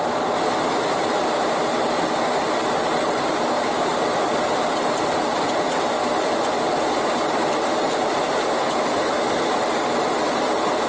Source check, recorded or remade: recorded